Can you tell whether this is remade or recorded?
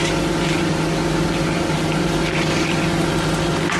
recorded